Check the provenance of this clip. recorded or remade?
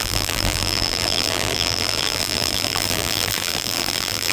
remade